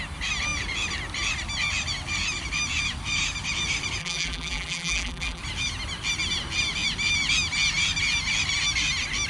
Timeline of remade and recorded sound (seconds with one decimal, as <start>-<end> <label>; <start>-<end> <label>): 0.0-4.0 recorded; 4.0-5.4 remade; 5.4-9.3 recorded